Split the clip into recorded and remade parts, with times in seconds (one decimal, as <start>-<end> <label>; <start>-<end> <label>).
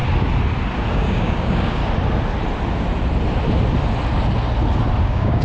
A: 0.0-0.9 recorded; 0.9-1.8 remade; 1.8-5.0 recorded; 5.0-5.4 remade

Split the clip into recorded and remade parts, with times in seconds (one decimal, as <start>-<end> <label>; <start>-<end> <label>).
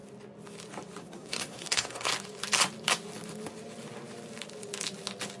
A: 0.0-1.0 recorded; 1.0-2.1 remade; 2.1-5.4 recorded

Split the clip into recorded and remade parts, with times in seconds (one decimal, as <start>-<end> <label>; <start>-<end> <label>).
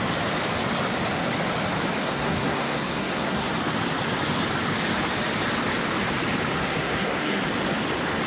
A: 0.0-2.0 recorded; 2.0-3.5 remade; 3.5-6.6 recorded; 6.6-7.4 remade; 7.4-8.3 recorded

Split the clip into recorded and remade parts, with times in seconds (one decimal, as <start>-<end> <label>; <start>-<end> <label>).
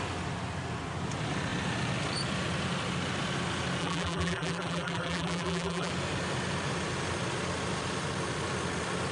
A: 0.0-3.8 recorded; 3.8-5.9 remade; 5.9-9.1 recorded